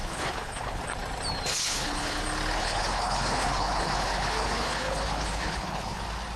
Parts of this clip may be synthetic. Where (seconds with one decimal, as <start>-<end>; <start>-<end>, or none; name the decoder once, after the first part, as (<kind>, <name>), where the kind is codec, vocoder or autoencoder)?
0.0-0.8 (codec, HILCodec); 1.5-2.2; 2.6-6.0